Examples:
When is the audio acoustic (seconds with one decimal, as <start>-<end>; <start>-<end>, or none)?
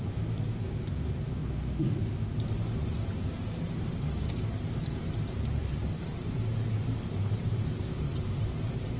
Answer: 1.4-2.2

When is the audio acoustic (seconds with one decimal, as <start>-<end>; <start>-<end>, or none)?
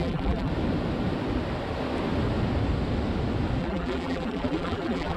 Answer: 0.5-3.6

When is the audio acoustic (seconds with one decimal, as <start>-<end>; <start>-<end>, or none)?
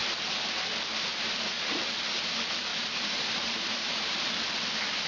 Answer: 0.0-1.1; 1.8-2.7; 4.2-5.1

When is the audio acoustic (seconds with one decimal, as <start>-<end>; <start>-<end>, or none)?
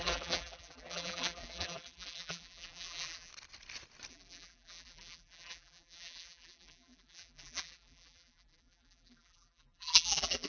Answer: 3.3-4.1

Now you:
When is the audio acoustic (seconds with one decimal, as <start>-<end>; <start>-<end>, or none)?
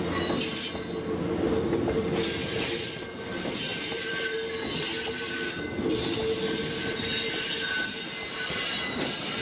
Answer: 0.0-2.4; 2.9-3.7; 5.5-9.4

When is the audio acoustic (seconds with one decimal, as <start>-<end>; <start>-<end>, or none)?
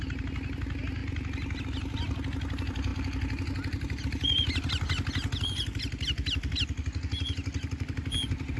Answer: 0.0-8.6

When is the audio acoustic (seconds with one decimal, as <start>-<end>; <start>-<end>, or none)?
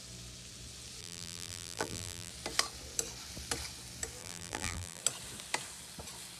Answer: 0.0-1.0; 2.3-4.2; 5.0-6.4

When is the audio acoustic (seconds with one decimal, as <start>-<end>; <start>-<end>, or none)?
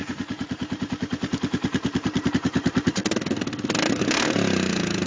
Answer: 3.0-4.0